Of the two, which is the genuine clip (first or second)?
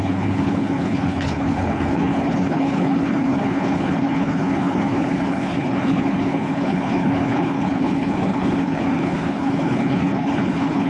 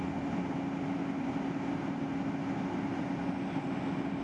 second